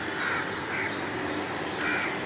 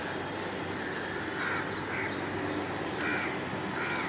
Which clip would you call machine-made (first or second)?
first